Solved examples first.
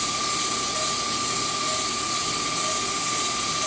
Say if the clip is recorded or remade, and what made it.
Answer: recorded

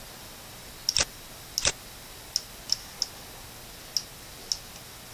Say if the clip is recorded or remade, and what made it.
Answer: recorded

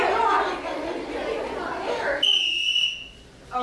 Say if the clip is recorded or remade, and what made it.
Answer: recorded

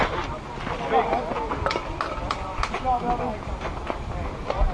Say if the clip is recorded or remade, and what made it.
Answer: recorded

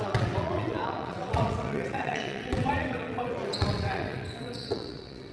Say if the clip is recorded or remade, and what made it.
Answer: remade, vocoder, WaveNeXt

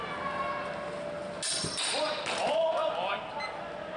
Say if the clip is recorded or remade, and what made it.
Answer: recorded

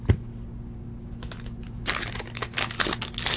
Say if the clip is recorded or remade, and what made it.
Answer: recorded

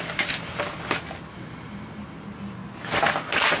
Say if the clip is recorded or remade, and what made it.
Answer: recorded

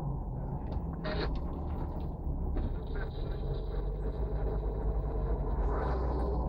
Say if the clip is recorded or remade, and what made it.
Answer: recorded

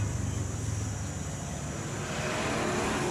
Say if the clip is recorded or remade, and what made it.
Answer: recorded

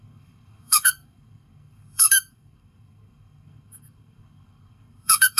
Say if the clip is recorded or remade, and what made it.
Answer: remade, codec, SNAC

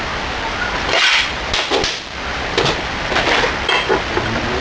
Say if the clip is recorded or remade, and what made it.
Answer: recorded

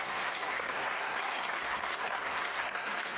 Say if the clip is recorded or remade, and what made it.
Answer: remade, codec, SNAC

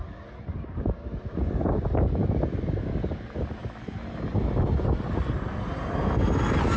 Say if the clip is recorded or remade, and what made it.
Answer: recorded